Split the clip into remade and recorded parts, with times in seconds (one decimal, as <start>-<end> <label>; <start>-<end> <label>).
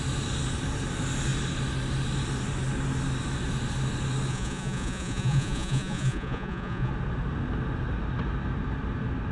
0.0-4.3 recorded; 4.3-6.9 remade; 6.9-9.3 recorded